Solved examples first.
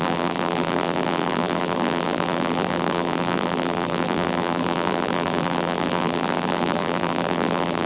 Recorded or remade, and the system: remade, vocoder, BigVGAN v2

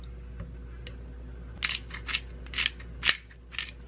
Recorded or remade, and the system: recorded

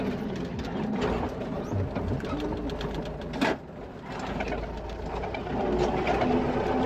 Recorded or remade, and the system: recorded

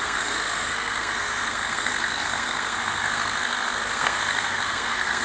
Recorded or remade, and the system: remade, codec, SNAC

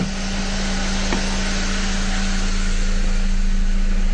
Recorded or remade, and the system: recorded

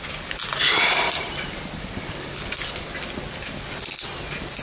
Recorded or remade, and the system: recorded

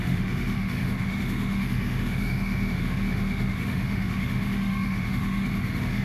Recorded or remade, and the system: remade, autoencoder, DAC-VAE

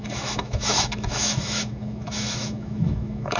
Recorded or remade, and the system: remade, autoencoder, DAC-VAE